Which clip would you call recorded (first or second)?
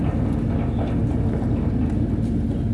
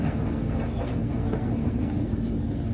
first